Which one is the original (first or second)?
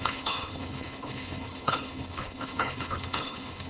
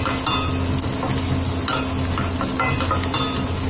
second